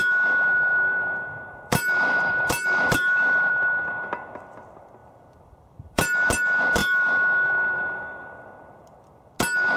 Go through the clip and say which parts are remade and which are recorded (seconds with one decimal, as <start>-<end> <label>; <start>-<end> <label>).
0.0-0.7 recorded; 0.7-3.5 remade; 3.5-5.0 recorded; 5.0-6.3 remade; 6.3-6.8 recorded; 6.8-9.3 remade; 9.3-9.8 recorded